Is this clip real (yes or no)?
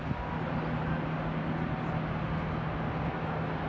yes